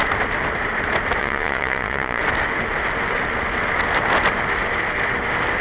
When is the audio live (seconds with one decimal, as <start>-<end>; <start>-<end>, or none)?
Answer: 0.0-1.2; 2.2-5.6